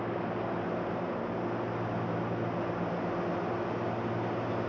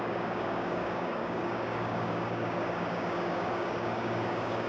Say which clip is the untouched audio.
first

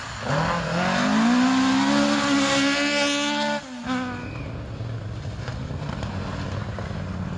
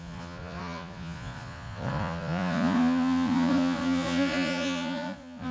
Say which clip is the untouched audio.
first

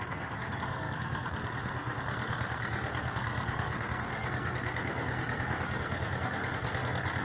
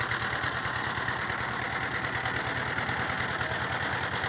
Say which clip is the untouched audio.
second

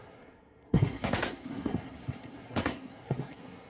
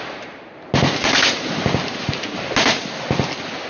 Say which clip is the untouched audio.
second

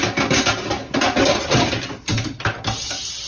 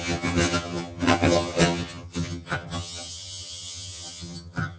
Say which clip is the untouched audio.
first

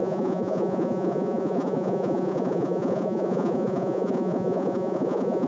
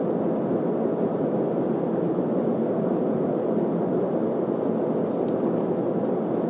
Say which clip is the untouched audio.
second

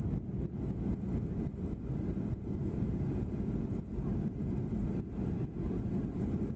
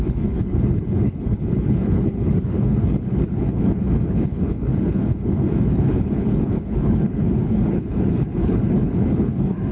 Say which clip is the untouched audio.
first